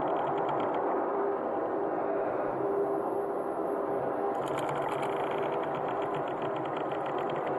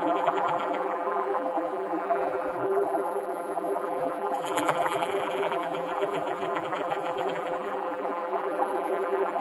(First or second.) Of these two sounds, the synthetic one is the second